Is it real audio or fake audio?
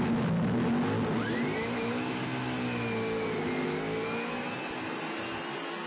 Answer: real